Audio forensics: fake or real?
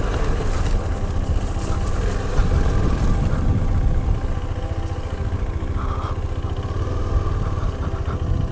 real